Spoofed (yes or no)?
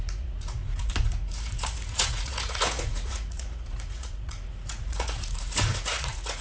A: yes